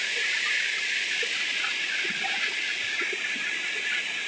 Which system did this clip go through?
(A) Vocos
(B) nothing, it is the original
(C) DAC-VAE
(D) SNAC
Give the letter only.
B